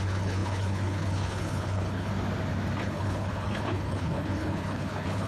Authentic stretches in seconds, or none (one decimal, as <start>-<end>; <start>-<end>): 2.1-2.8